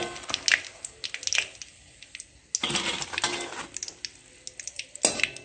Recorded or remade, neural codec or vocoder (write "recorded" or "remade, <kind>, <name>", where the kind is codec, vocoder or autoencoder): recorded